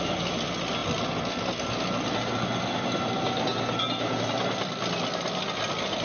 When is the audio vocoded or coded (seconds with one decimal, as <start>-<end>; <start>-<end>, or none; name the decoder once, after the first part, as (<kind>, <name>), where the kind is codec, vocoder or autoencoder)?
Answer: none

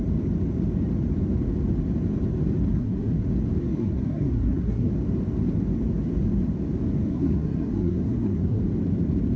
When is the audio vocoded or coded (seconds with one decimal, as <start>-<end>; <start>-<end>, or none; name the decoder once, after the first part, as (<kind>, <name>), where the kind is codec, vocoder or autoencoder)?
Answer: 2.7-3.2 (codec, SNAC); 3.6-4.9; 7.1-8.6

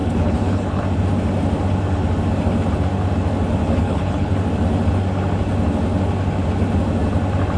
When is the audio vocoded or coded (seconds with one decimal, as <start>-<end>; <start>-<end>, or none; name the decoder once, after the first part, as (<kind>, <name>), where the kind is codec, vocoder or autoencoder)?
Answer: 0.0-0.8 (codec, HILCodec); 3.6-4.3

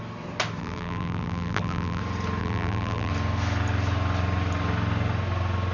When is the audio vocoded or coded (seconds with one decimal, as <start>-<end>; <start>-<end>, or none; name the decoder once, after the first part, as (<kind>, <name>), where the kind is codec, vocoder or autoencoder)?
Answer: 0.6-2.0 (vocoder, BigVGAN v2); 2.4-3.1

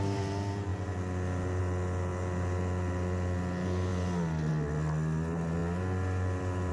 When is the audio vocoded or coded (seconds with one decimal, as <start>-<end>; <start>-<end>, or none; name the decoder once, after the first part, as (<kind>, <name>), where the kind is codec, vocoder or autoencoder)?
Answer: none